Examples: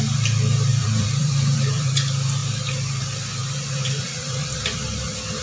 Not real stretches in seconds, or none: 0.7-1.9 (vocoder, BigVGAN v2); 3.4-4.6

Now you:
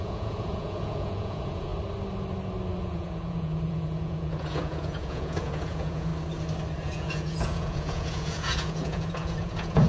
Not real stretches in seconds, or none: 0.0-1.7 (vocoder, Vocos); 2.8-6.1; 6.8-9.9

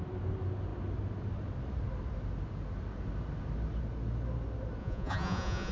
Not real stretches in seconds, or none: 4.8-5.7 (vocoder, Vocos)